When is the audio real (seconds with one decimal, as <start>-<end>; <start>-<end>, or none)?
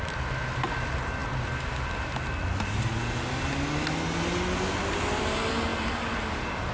0.0-6.7